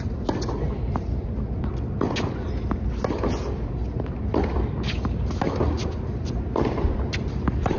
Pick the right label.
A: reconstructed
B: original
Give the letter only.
B